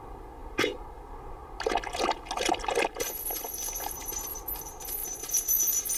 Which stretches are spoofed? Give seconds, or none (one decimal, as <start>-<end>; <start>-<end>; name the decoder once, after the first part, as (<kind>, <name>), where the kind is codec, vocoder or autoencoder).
none